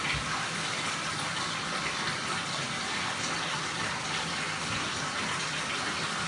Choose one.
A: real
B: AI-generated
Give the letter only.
A